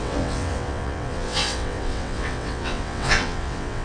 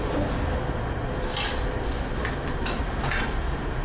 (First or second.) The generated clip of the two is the first